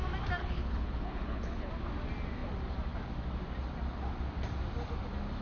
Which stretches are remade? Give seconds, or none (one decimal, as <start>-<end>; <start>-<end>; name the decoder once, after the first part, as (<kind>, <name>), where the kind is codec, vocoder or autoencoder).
0.4-1.7 (codec, HILCodec)